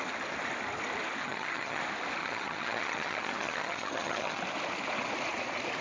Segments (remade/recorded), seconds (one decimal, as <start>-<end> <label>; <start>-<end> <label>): 0.0-1.2 recorded; 1.2-1.8 remade; 1.8-2.2 recorded; 2.2-4.4 remade; 4.4-5.8 recorded